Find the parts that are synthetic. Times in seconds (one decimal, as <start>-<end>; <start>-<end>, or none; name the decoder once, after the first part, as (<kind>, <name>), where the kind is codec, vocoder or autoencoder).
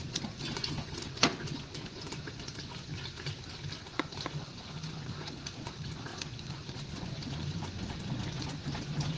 0.0-2.9 (vocoder, Vocos); 3.8-9.2